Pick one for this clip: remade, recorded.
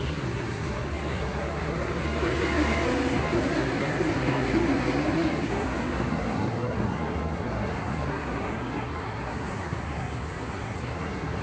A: remade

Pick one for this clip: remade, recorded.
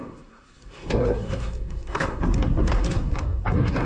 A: remade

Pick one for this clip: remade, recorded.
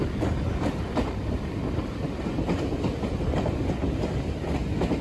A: recorded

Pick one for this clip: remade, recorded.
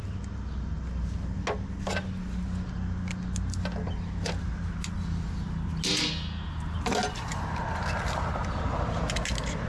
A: recorded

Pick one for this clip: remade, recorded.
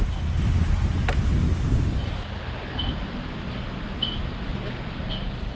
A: recorded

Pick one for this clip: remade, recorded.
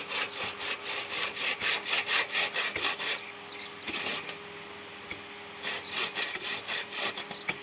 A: recorded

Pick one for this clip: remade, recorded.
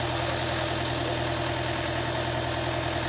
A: recorded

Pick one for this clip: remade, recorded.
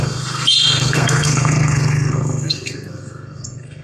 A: remade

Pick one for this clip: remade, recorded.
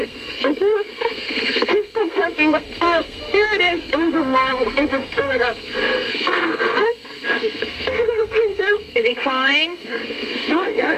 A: remade